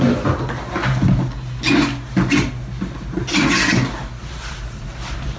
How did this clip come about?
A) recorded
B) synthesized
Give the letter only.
A